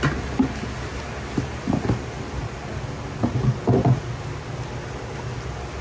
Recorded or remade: recorded